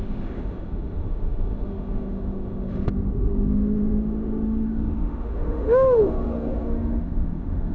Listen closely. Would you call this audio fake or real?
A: fake